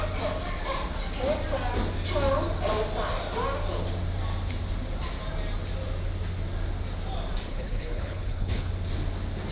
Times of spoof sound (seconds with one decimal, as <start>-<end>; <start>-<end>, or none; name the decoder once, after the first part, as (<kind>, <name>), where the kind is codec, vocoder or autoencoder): 7.5-8.7 (codec, HILCodec)